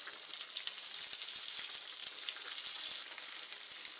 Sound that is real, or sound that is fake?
real